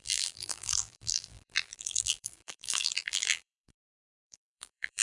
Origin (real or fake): fake